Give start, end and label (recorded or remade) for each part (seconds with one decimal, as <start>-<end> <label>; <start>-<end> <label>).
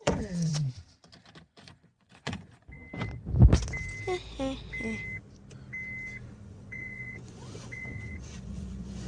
0.0-0.5 remade; 0.5-1.6 recorded; 1.6-2.8 remade; 2.8-6.3 recorded; 6.3-9.1 remade